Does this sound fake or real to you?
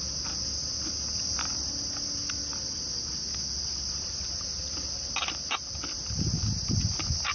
real